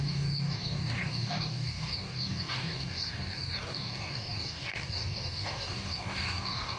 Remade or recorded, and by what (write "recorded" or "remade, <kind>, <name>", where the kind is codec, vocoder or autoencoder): remade, codec, DAC